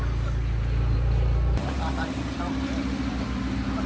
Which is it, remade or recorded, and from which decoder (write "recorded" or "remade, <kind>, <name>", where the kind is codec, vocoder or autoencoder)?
recorded